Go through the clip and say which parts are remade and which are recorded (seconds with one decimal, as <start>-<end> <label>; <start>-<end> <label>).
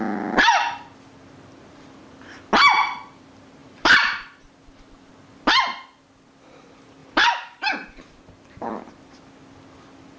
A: 0.0-3.6 recorded; 3.6-5.1 remade; 5.1-7.0 recorded; 7.0-8.2 remade; 8.2-10.2 recorded